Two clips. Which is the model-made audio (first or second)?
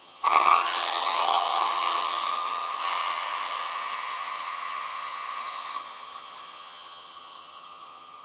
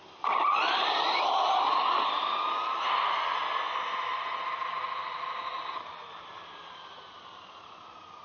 first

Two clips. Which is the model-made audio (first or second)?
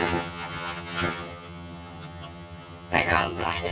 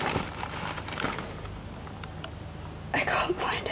first